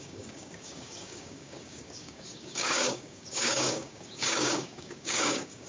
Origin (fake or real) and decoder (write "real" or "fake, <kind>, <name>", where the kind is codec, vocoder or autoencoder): fake, codec, DAC